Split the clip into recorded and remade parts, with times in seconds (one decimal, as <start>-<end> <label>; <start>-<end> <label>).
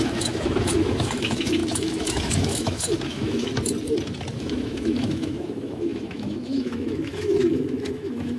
0.0-3.5 remade; 3.5-4.4 recorded; 4.4-8.4 remade